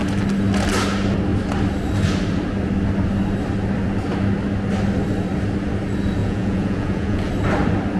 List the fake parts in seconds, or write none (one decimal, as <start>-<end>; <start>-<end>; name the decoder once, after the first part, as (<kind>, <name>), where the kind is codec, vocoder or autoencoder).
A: 6.2-7.3 (vocoder, Vocos)